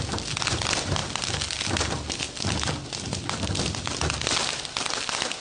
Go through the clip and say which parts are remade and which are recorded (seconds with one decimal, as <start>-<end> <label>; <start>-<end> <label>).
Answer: 0.0-5.4 recorded